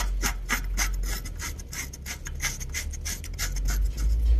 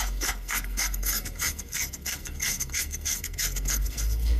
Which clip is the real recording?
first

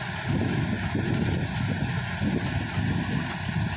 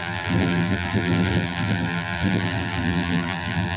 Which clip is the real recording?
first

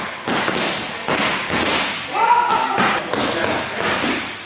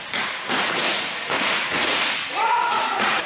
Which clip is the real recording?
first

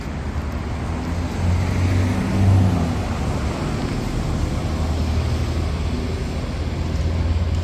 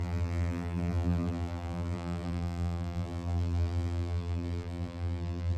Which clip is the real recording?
first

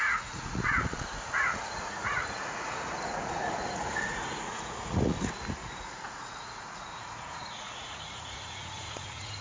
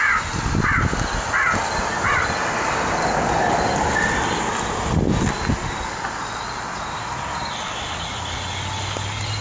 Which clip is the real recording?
second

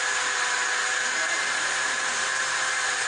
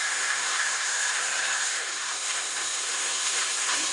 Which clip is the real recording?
first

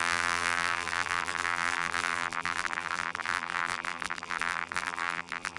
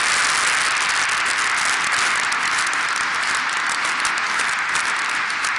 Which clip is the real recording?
second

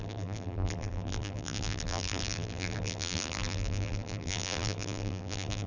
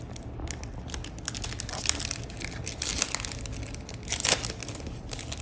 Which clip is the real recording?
second